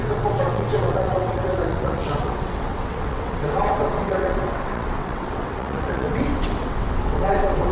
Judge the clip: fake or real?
fake